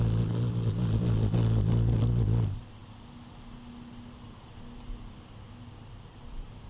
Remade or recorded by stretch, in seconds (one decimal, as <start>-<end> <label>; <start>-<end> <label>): 0.0-6.7 recorded